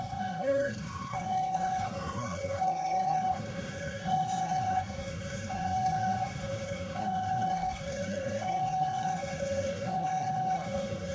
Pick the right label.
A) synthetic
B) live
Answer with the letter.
A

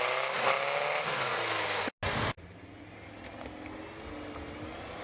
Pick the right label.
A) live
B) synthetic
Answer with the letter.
A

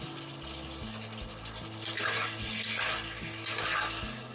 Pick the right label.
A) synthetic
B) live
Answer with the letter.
B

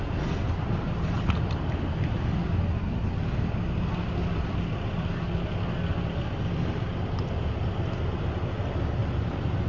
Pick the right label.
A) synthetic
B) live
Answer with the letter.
B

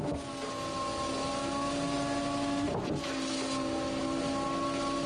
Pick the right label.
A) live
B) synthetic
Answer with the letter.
A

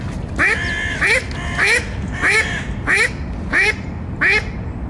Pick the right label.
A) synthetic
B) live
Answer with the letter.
B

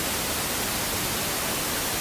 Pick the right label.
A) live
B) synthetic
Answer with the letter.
A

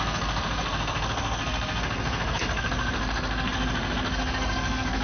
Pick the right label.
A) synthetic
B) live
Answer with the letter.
A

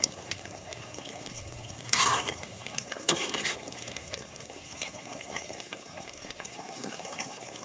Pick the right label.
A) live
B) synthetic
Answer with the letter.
B